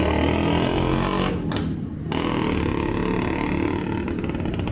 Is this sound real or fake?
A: real